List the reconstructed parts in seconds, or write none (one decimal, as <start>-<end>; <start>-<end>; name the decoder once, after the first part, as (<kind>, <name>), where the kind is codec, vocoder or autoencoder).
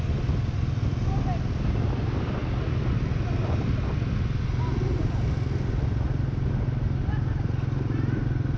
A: none